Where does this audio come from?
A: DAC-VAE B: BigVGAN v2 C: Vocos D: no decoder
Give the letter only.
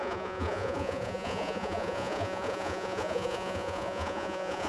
C